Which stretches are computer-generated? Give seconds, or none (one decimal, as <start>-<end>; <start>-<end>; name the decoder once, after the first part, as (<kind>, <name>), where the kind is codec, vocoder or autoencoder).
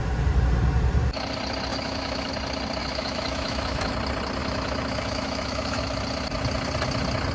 1.7-2.3 (autoencoder, DAC-VAE); 2.8-3.9; 4.4-5.8